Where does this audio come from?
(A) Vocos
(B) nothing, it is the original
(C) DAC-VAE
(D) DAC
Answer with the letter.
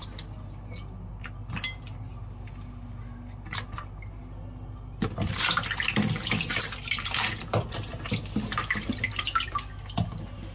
B